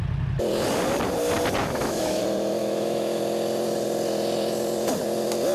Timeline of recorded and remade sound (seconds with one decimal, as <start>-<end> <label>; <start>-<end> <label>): 0.0-1.6 recorded; 1.6-2.2 remade; 2.2-2.6 recorded; 2.6-3.2 remade; 3.2-5.5 recorded